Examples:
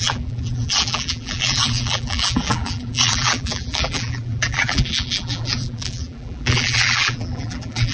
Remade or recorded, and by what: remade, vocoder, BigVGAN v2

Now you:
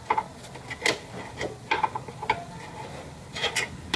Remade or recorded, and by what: recorded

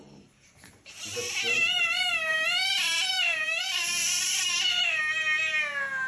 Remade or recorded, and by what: remade, vocoder, BigVGAN v2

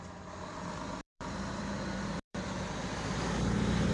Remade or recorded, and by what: remade, vocoder, BigVGAN v2